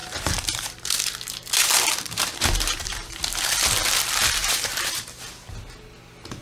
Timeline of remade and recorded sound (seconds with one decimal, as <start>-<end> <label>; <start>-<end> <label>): 0.0-0.9 remade; 0.9-1.6 recorded; 1.6-3.2 remade; 3.2-4.4 recorded; 4.4-5.5 remade; 5.5-6.4 recorded